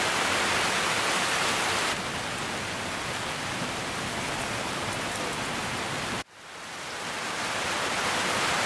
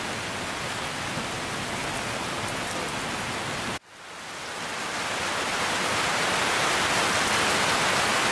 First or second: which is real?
second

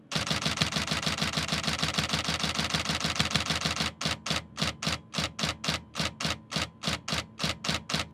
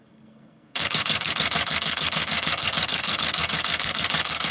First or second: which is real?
first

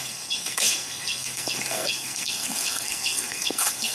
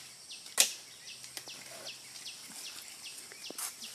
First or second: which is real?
second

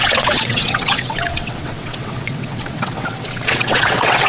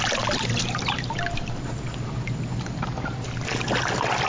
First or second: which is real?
second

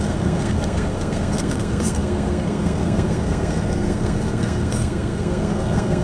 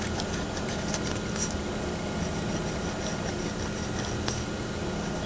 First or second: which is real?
second